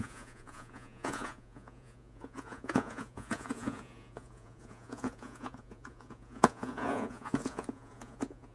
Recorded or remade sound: remade